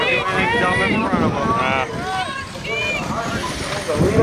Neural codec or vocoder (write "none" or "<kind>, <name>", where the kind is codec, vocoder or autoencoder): none